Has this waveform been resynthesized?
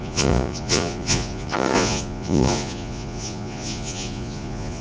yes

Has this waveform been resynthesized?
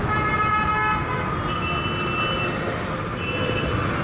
no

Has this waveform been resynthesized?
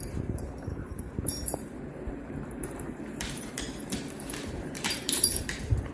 yes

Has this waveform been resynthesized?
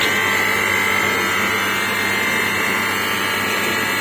no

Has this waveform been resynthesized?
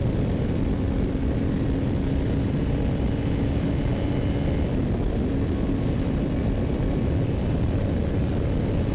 yes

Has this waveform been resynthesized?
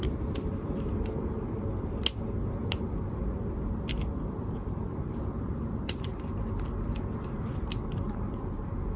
yes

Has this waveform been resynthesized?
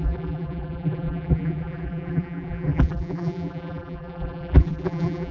yes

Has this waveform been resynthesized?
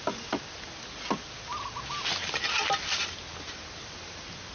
no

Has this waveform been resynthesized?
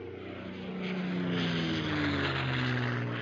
no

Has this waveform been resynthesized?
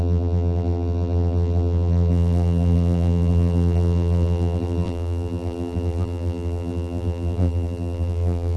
yes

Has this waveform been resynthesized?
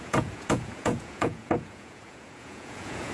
yes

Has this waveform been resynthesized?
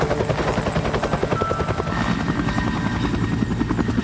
no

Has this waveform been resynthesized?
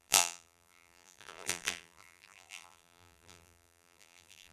yes